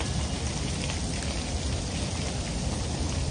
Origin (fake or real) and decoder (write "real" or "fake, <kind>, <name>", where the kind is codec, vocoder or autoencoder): real